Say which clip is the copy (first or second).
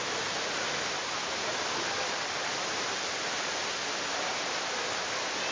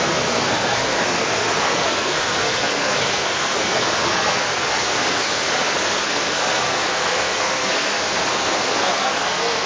second